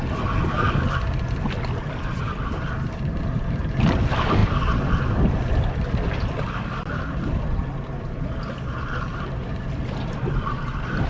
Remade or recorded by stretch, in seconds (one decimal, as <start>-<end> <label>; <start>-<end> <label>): 0.0-11.1 recorded